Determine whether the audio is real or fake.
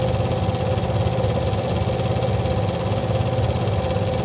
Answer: real